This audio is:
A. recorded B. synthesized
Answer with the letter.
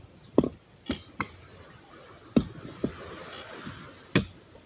A